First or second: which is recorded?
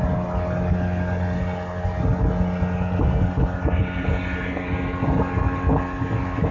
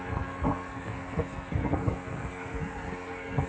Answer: first